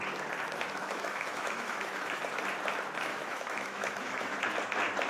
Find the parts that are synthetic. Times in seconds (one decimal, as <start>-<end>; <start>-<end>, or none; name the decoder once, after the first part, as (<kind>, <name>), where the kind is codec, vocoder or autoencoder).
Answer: 0.8-2.2 (autoencoder, DAC-VAE); 3.1-4.4